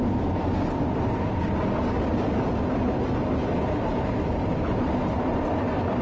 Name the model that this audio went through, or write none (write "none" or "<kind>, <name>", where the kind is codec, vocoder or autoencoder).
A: none